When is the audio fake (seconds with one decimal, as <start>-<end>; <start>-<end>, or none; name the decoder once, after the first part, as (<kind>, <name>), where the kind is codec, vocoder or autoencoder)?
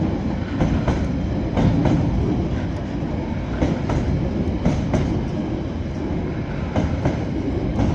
none